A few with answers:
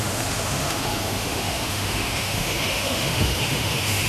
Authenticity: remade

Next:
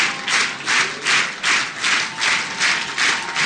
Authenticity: recorded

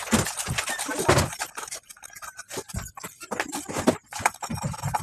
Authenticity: recorded